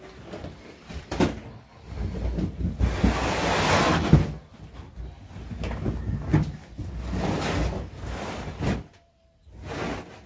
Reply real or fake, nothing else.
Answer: real